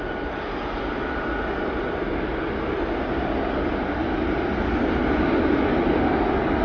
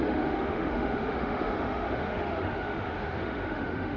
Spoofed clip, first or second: second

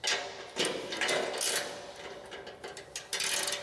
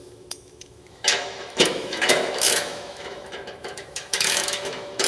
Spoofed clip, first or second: second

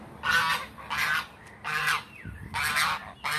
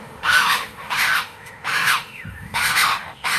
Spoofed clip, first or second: second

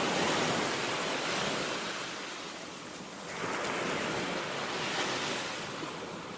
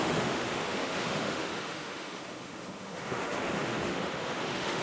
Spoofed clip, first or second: second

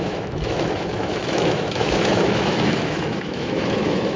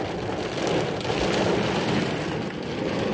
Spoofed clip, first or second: first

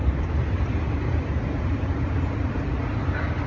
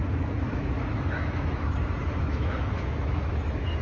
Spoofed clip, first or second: second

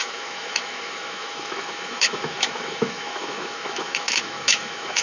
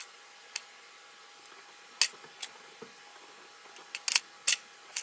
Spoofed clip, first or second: first